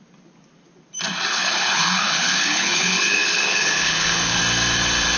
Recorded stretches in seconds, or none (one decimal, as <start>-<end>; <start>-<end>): 0.0-1.3; 4.4-5.2

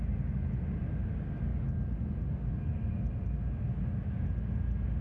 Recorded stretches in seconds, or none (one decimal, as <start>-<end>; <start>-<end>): 0.0-5.0

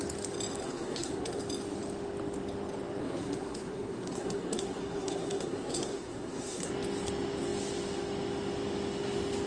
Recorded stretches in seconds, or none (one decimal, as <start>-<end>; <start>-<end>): 0.0-0.6; 1.4-3.0; 6.7-9.5

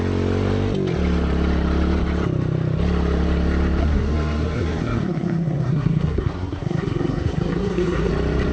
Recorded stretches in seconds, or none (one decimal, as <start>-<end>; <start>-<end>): 0.0-3.8; 8.1-8.5